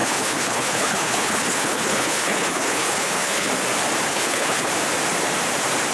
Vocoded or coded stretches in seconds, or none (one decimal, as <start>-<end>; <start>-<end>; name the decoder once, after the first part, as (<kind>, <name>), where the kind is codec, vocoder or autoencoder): 0.0-3.5 (codec, HILCodec); 4.1-4.7